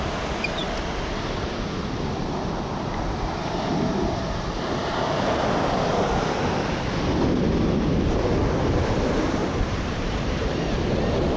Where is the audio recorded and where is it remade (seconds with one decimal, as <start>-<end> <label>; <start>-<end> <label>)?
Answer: 0.0-9.4 recorded; 9.4-10.6 remade; 10.6-11.4 recorded